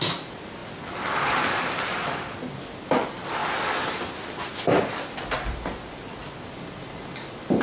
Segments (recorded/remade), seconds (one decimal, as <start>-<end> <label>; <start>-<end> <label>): 0.0-7.6 recorded